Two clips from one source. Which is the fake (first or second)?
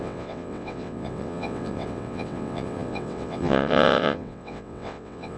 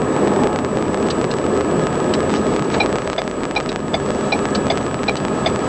first